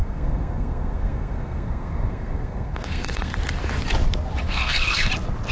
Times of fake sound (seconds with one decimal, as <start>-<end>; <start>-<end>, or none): 0.0-3.3; 4.5-5.1